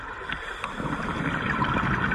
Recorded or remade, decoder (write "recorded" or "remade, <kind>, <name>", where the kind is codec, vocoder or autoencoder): recorded